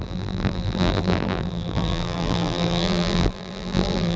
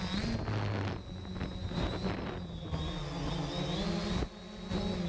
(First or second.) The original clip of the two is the second